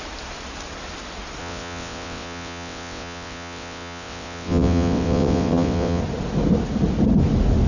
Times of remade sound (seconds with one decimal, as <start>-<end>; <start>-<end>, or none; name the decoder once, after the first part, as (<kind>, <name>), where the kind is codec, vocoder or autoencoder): 1.4-6.0 (vocoder, WaveNeXt)